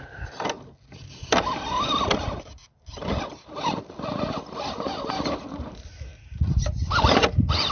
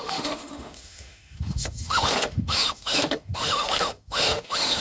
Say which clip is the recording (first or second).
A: first